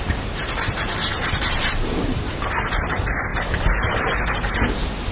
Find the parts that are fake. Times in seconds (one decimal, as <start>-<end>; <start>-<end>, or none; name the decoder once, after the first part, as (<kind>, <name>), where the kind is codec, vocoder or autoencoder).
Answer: 0.0-5.1 (vocoder, BigVGAN v2)